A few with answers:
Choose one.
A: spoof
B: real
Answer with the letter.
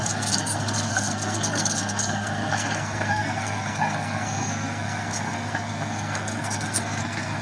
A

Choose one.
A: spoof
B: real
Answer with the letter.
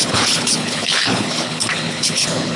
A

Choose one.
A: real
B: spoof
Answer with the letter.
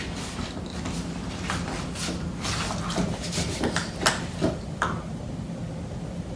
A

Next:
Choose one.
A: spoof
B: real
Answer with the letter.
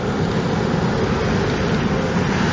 B